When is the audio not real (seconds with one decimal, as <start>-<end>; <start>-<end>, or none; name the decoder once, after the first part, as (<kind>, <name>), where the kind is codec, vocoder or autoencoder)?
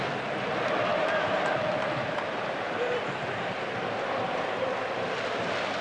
0.9-3.6 (vocoder, BigVGAN v2)